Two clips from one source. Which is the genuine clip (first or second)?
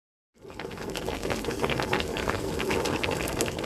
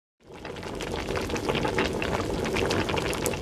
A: second